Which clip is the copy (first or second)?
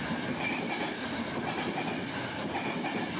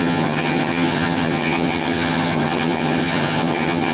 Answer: second